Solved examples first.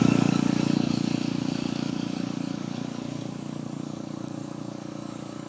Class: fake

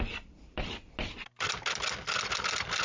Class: real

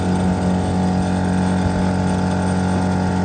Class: real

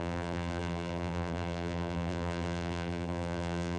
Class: fake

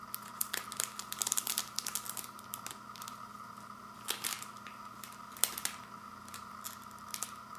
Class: real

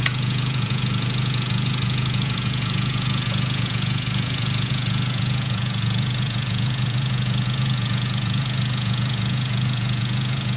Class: fake